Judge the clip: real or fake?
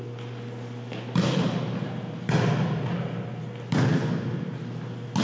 real